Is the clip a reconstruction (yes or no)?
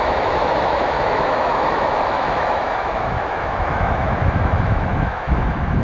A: yes